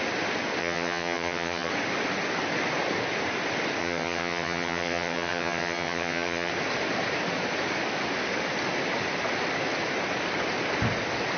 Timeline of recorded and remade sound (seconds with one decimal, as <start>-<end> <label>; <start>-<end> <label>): 0.0-0.6 recorded; 0.6-1.7 remade; 1.7-3.8 recorded; 3.8-6.5 remade; 6.5-11.4 recorded